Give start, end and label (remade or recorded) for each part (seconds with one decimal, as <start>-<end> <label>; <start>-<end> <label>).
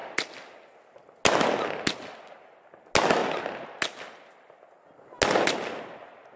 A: 0.0-6.4 recorded